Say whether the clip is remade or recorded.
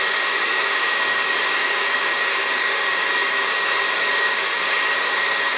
remade